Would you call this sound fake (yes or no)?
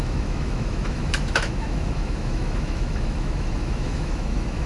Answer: yes